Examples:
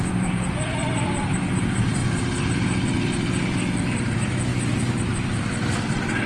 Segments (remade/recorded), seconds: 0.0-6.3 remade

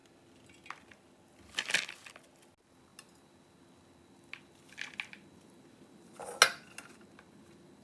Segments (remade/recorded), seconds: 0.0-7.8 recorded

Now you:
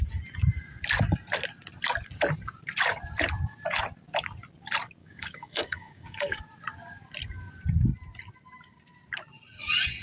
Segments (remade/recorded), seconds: 0.0-5.0 recorded; 5.0-6.4 remade; 6.4-10.0 recorded